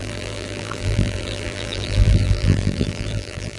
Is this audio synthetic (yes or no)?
yes